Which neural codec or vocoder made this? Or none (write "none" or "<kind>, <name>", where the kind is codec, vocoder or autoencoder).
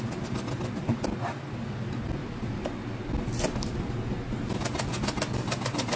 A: none